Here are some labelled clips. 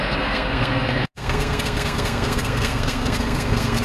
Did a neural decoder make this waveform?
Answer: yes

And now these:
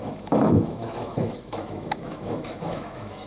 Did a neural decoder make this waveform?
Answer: yes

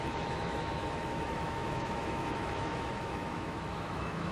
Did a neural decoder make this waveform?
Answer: yes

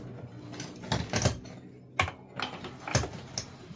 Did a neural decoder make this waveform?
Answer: no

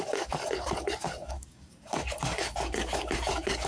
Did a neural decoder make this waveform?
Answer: yes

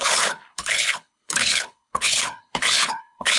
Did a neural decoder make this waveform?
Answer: yes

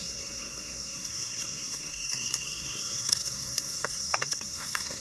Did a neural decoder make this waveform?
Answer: yes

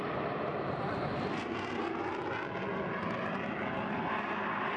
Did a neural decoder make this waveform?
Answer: no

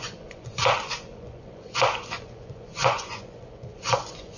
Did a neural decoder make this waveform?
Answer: yes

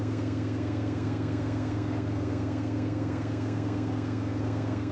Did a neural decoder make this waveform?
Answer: yes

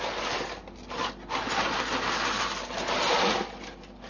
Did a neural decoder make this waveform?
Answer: no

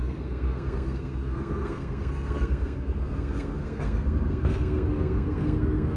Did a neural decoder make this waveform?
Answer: yes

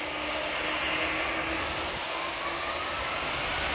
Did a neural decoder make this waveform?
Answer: no